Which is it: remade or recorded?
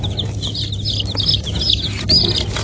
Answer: recorded